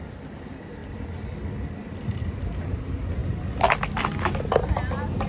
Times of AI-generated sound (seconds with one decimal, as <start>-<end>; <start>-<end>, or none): none

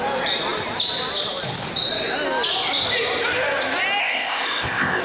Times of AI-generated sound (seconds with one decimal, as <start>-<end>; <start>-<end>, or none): 4.0-5.0

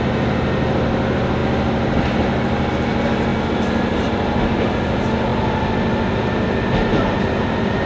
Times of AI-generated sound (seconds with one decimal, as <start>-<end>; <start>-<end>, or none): none

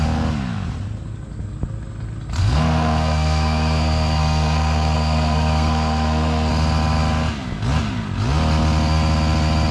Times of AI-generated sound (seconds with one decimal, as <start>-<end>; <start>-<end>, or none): 2.4-6.5

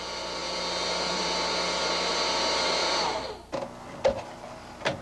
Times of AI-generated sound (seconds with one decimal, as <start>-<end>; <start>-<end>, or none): none